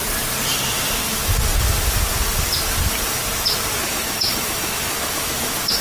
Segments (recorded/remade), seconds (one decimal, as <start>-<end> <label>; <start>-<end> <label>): 0.0-3.8 recorded; 3.8-5.8 remade